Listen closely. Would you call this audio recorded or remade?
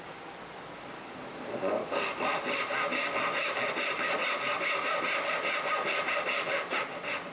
recorded